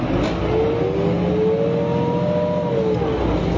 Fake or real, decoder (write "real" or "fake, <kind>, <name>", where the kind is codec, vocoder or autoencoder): real